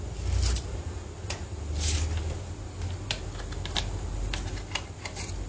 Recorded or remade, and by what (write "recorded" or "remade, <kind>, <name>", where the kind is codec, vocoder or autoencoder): recorded